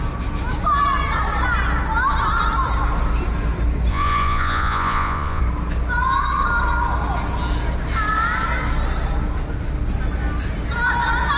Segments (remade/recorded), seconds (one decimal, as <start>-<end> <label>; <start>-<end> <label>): 0.0-3.9 recorded; 3.9-5.4 remade; 5.4-11.4 recorded